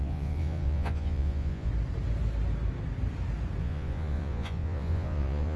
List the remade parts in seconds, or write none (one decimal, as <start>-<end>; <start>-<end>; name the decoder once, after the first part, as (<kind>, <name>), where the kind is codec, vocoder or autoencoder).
0.0-1.7 (vocoder, Vocos); 3.6-5.6